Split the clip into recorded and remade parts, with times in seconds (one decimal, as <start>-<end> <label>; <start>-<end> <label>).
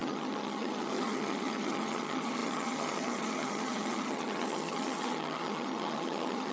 0.0-6.5 remade